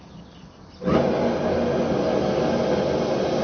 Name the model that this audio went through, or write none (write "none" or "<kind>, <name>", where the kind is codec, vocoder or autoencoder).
none